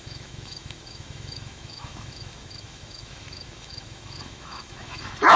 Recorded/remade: remade